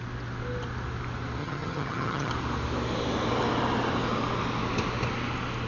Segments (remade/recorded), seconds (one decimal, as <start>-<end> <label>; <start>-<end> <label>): 0.0-1.4 recorded; 1.4-2.3 remade; 2.3-5.7 recorded